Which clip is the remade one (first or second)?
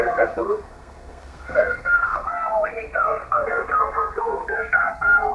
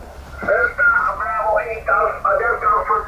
first